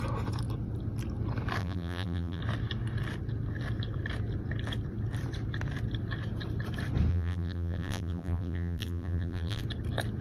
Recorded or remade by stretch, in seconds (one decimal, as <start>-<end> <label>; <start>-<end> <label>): 0.0-1.6 recorded; 1.6-2.4 remade; 2.4-7.1 recorded; 7.1-9.6 remade; 9.6-10.2 recorded